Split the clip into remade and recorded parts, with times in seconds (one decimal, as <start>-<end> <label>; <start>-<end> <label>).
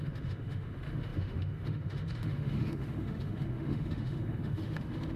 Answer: 0.0-5.2 remade